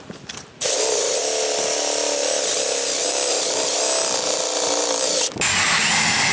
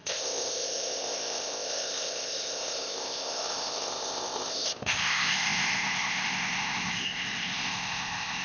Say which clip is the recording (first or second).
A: first